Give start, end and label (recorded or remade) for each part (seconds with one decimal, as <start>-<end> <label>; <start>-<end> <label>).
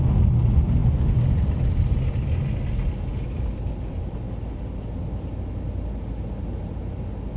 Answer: 0.0-7.4 recorded